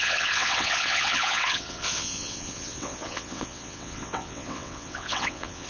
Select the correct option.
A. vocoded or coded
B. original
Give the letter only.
A